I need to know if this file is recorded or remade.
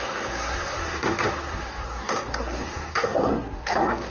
remade